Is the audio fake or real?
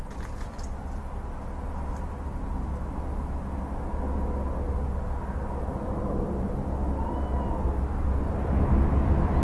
real